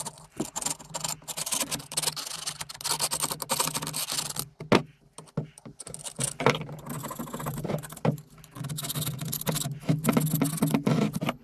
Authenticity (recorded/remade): recorded